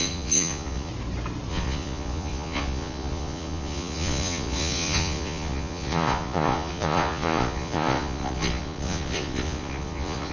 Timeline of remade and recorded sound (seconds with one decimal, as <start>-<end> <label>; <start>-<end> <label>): 0.0-0.9 remade; 0.9-1.5 recorded; 1.5-10.3 remade